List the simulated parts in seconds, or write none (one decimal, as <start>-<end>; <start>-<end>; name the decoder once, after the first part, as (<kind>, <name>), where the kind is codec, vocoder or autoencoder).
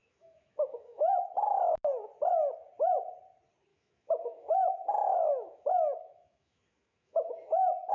0.0-1.2 (autoencoder, DAC-VAE); 3.7-7.9